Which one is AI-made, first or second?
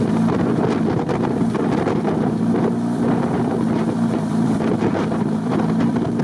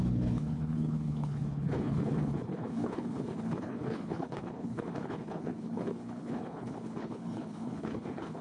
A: second